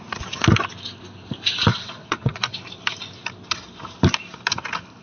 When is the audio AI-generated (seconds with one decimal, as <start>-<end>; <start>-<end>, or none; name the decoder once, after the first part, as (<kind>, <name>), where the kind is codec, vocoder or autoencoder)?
1.7-2.6 (vocoder, WaveNeXt)